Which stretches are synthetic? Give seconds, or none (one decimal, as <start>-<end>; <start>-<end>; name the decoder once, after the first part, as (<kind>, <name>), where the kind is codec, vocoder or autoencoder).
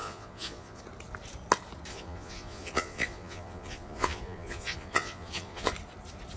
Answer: 0.0-0.8 (vocoder, Vocos); 1.9-5.7